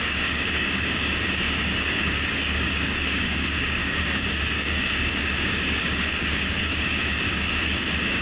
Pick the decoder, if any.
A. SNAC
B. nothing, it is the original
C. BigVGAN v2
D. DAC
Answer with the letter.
D